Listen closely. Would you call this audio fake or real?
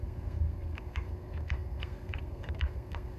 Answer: fake